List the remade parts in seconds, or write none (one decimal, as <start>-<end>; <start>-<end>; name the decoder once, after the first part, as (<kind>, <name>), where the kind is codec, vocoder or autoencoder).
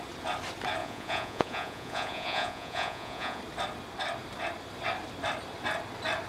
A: 0.8-3.4 (vocoder, Vocos)